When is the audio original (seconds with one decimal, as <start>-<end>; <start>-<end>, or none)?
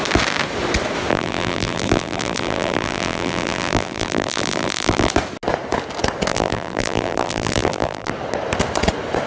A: 0.0-1.1; 5.1-6.3; 8.1-9.3